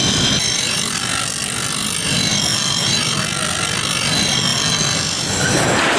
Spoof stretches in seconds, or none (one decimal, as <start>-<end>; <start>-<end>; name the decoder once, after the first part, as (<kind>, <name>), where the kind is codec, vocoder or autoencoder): none